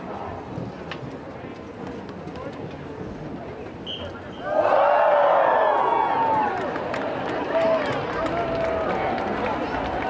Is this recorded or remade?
recorded